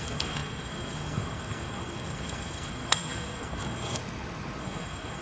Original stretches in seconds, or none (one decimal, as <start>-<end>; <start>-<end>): 4.0-4.6